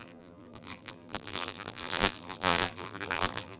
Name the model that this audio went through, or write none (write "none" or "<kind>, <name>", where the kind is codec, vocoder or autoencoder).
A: vocoder, BigVGAN v2